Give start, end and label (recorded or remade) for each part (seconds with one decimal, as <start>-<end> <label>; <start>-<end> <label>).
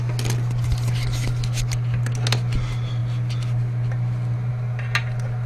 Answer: 0.0-5.5 recorded